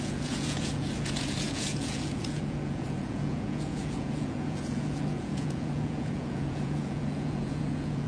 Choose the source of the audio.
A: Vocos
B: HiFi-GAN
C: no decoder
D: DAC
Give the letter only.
A